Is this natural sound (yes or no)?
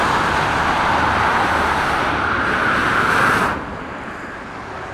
yes